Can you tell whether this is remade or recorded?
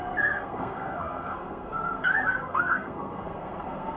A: remade